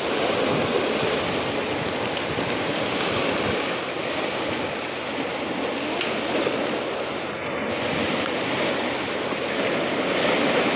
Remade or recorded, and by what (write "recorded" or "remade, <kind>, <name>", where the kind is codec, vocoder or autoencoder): recorded